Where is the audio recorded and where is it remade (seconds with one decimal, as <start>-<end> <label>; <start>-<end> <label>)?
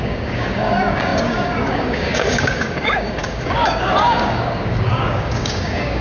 0.0-6.0 remade